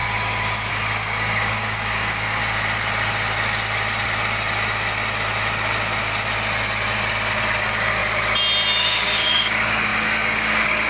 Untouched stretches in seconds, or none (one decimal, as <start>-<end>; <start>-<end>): 0.0-0.7; 2.4-7.6; 8.0-8.8